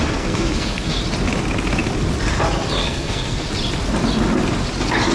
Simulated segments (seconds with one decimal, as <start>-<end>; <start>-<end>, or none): 0.0-1.0; 2.8-3.5